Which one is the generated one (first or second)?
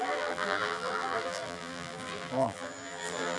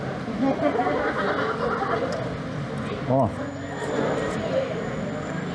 first